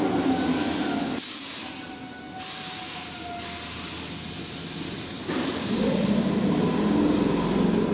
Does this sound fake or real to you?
real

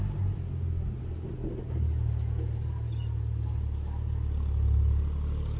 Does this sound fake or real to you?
real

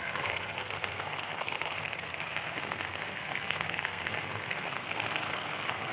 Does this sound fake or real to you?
fake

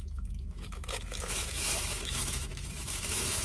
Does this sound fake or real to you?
fake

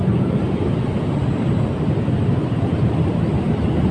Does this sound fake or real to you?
real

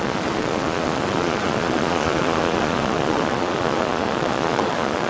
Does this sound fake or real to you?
fake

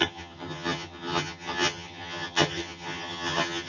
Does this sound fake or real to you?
fake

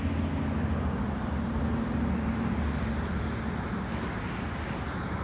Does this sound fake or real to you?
real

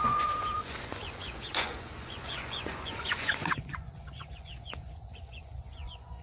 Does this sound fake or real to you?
fake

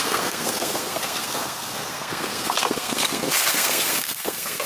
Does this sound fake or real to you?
fake